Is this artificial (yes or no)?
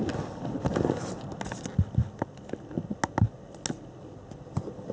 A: no